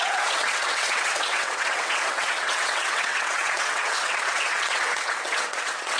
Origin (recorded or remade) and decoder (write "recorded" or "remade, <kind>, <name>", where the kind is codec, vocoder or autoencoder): remade, vocoder, WaveNeXt